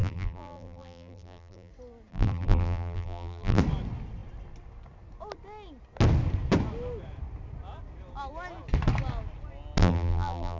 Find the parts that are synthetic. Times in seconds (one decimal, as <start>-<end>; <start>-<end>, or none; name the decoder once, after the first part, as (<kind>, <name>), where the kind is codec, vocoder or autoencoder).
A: 0.0-1.7 (vocoder, BigVGAN v2); 2.1-3.6; 9.8-10.6